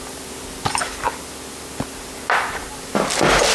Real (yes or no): yes